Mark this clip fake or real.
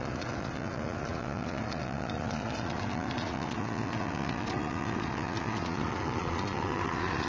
fake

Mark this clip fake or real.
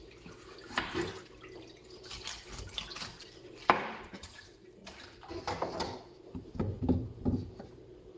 real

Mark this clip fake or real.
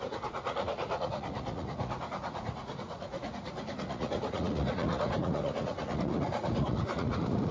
fake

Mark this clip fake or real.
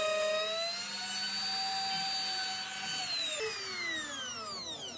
real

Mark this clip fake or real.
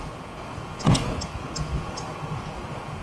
fake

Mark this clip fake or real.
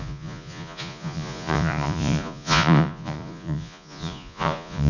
fake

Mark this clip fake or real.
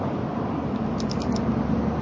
real